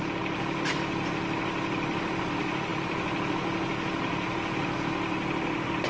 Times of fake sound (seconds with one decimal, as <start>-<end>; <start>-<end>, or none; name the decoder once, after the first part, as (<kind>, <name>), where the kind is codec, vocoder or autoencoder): none